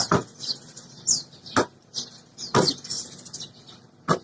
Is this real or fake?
real